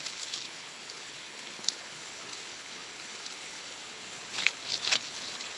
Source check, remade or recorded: remade